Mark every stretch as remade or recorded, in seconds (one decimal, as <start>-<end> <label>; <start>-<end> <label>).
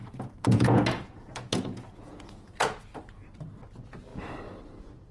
0.0-3.0 remade; 3.0-5.1 recorded